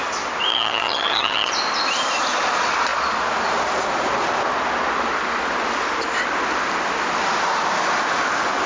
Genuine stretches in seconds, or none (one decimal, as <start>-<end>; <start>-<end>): 0.0-0.5; 1.5-8.7